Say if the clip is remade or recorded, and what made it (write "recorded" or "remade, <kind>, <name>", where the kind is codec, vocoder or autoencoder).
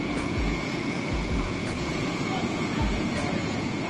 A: remade, vocoder, Vocos